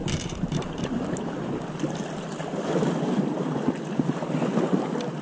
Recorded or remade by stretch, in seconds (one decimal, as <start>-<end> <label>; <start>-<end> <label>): 0.0-1.5 remade; 1.5-5.2 recorded

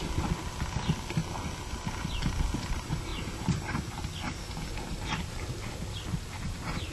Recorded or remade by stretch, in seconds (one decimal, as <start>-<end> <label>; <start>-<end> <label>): 0.0-3.1 recorded; 3.1-3.9 remade; 3.9-4.9 recorded; 4.9-5.7 remade; 5.7-6.9 recorded

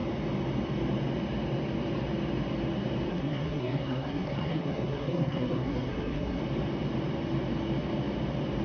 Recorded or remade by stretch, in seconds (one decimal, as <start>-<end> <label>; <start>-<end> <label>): 0.0-3.1 recorded; 3.1-6.4 remade; 6.4-8.6 recorded

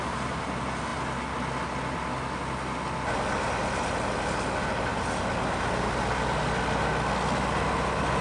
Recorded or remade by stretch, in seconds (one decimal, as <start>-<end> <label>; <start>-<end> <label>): 0.0-8.2 recorded

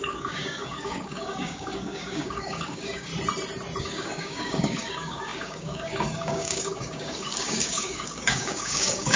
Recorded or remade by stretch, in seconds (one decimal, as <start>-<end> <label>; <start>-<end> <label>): 0.0-3.1 remade; 3.1-3.8 recorded; 3.8-9.2 remade